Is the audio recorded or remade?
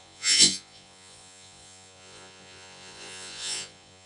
remade